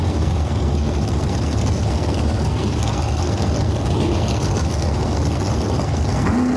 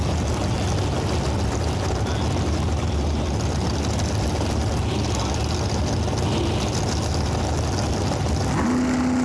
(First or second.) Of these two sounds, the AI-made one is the first